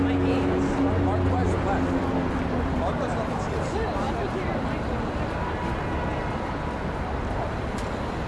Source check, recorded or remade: recorded